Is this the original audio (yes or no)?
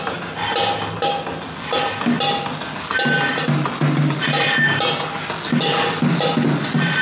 yes